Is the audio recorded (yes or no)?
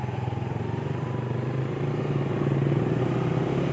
yes